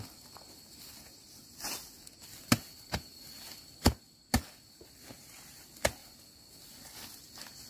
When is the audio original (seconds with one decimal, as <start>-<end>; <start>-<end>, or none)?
0.0-7.7